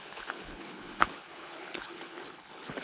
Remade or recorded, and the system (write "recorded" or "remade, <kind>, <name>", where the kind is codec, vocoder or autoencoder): remade, codec, HILCodec